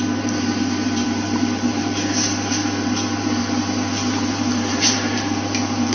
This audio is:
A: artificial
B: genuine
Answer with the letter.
A